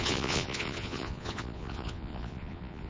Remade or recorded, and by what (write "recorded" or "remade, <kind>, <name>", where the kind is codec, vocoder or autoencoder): remade, vocoder, Vocos